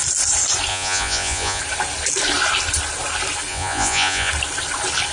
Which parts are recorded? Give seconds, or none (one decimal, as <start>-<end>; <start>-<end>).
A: 0.0-0.7; 1.6-3.5; 4.3-5.1